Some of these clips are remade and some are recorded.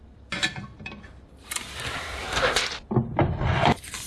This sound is remade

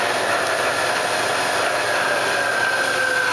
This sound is recorded